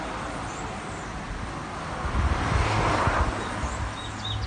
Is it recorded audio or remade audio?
recorded